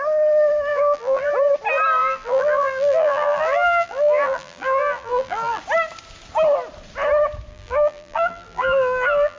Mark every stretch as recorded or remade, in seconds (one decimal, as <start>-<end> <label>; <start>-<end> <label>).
0.0-0.7 recorded; 0.7-1.3 remade; 1.3-2.0 recorded; 2.0-5.6 remade; 5.6-7.5 recorded; 7.5-9.4 remade

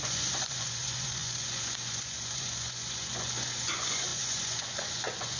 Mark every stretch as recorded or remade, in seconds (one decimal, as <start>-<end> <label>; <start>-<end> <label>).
0.0-5.4 remade

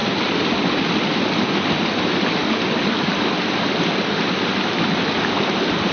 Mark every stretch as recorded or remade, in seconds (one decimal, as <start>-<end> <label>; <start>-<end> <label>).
0.0-5.9 recorded

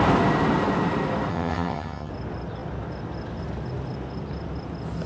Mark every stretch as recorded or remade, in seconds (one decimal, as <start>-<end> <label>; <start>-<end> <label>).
0.0-1.3 recorded; 1.3-2.1 remade; 2.1-5.1 recorded

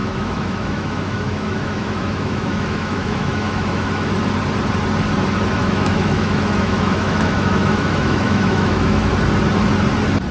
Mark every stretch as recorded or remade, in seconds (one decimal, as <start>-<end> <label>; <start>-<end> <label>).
0.0-4.1 remade; 4.1-5.6 recorded; 5.6-9.1 remade; 9.1-10.3 recorded

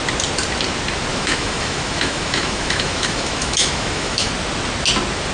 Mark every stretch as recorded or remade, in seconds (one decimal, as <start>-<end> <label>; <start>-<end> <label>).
0.0-1.1 recorded; 1.1-4.3 remade; 4.3-5.3 recorded